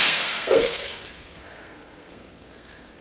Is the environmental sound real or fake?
fake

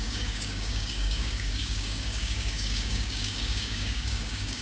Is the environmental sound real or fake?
fake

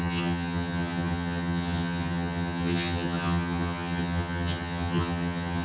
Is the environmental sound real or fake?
fake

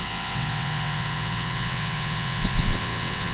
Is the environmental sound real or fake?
fake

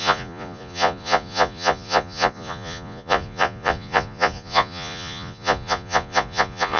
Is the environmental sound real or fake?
fake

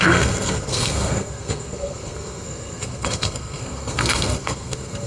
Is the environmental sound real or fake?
fake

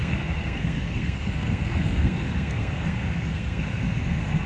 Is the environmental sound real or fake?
fake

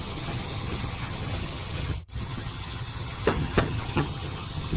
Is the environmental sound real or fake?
fake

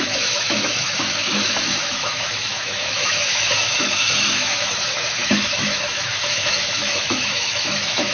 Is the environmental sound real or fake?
fake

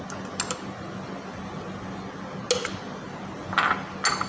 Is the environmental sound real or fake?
real